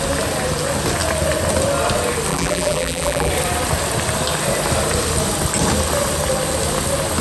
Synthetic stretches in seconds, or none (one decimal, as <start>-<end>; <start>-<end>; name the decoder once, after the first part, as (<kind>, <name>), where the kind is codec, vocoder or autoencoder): 2.3-3.3 (vocoder, BigVGAN v2)